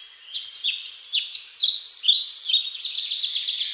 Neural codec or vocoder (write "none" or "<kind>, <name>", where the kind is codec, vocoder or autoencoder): none